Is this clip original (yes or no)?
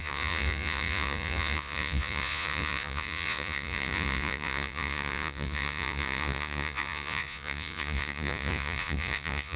no